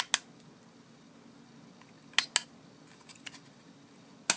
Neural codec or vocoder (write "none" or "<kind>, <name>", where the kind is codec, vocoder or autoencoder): none